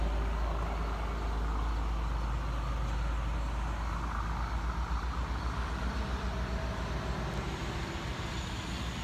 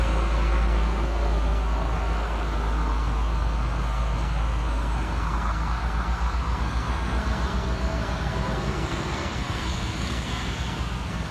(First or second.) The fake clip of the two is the second